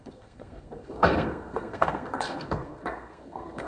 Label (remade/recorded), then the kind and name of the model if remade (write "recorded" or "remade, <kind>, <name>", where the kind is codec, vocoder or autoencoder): remade, codec, SNAC